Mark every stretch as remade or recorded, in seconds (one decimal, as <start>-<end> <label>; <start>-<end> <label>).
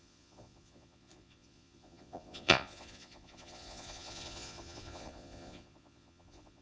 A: 0.0-6.6 remade